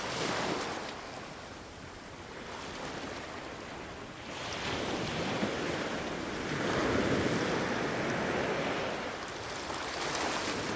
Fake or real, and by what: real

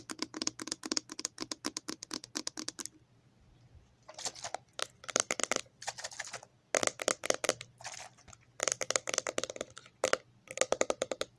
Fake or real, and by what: real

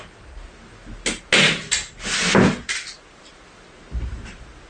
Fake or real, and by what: real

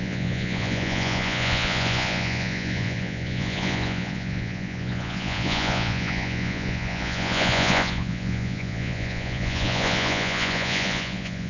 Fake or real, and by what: fake, vocoder, Vocos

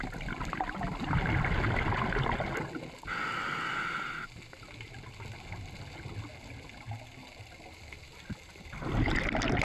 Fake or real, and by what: real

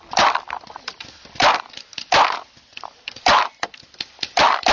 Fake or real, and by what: fake, vocoder, BigVGAN v2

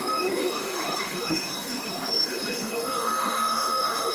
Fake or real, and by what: fake, autoencoder, DAC-VAE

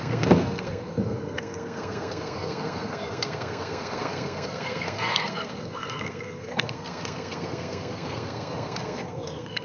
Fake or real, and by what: fake, codec, SNAC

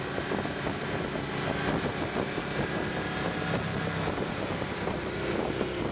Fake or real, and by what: real